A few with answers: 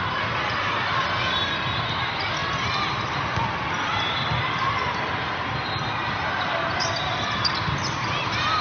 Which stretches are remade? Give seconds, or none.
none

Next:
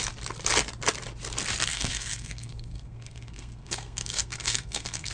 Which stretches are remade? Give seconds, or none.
1.7-5.1 (codec, SNAC)

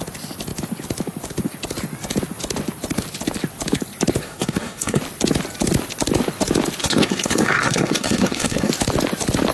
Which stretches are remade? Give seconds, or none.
4.2-5.0 (codec, SNAC); 6.8-8.7

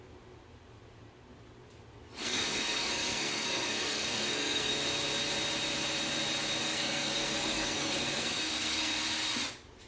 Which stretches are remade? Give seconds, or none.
2.2-4.7 (codec, SNAC); 6.6-9.0

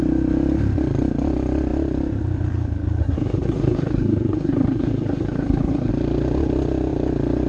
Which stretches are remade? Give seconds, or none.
3.0-5.9 (codec, SNAC)

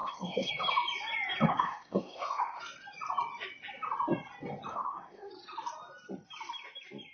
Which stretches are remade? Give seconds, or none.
0.0-0.5 (codec, SNAC); 1.5-2.6; 4.7-5.3